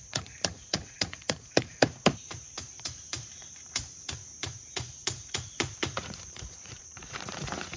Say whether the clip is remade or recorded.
remade